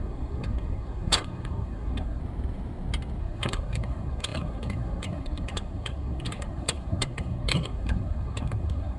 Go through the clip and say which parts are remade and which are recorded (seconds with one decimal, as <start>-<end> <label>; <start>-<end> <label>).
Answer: 0.0-2.2 remade; 2.2-3.2 recorded; 3.2-9.0 remade